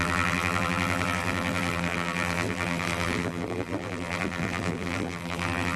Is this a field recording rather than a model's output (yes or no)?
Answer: no